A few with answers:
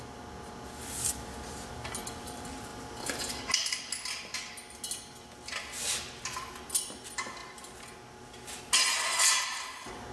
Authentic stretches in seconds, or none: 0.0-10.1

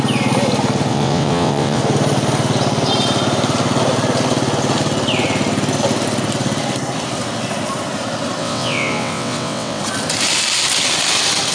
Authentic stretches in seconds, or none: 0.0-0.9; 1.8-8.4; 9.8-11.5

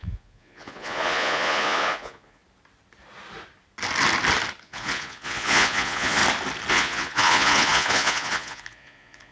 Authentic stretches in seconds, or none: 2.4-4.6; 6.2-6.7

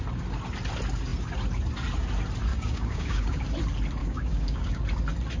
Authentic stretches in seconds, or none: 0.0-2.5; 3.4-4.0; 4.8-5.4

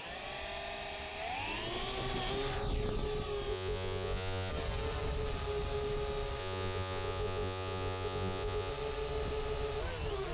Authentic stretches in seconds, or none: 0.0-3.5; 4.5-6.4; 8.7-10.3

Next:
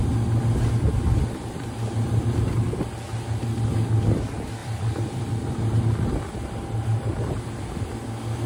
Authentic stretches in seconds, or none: 0.0-0.9; 2.2-4.6; 5.8-6.9; 7.9-8.5